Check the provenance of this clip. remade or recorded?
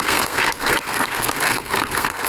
remade